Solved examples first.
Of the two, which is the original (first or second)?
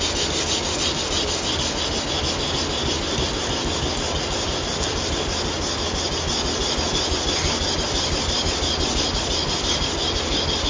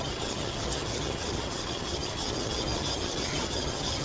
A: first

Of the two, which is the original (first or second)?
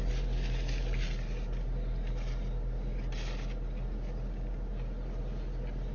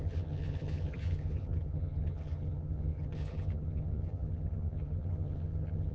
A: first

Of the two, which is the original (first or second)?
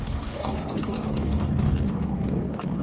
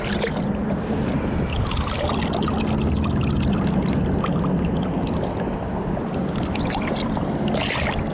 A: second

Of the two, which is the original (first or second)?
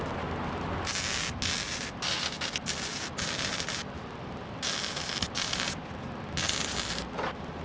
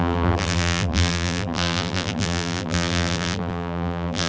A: first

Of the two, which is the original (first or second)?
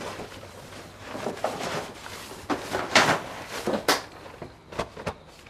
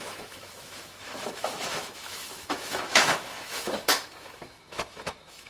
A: first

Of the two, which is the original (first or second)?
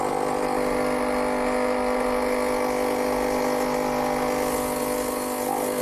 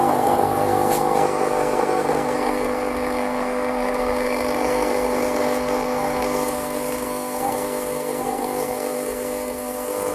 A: first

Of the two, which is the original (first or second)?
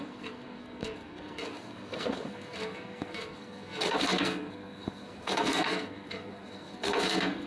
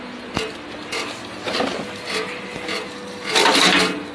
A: second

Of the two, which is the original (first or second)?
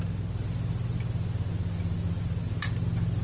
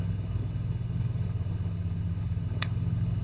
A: first